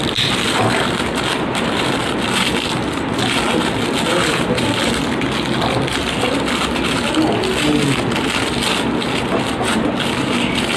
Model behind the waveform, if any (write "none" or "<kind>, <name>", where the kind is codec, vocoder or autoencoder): none